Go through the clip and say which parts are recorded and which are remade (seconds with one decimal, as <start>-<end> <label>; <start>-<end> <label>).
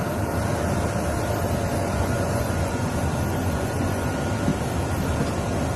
0.0-1.8 recorded; 1.8-2.9 remade; 2.9-3.3 recorded; 3.3-4.1 remade; 4.1-5.8 recorded